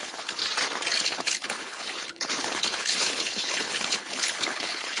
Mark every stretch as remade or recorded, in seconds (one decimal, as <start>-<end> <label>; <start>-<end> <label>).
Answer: 0.0-0.4 remade; 0.4-0.9 recorded; 0.9-5.0 remade

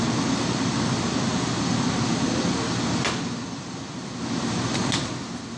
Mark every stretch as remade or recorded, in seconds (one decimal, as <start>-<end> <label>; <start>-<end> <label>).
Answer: 0.0-5.6 recorded

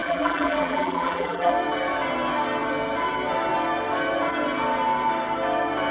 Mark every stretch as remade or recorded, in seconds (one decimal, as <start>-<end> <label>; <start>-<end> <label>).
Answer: 0.0-1.5 remade; 1.5-5.9 recorded

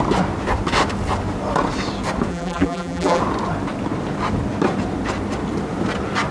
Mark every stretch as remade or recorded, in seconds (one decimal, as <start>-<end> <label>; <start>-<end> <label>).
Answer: 0.0-2.3 recorded; 2.3-3.2 remade; 3.2-6.3 recorded

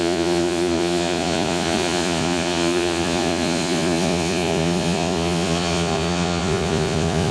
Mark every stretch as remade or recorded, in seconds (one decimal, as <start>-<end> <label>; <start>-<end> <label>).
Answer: 0.0-7.3 remade

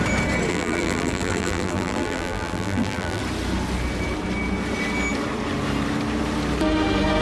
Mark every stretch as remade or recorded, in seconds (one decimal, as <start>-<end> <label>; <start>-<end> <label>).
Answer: 0.0-0.5 recorded; 0.5-3.2 remade; 3.2-7.2 recorded